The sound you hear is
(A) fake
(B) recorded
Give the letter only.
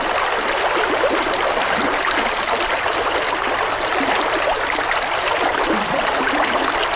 B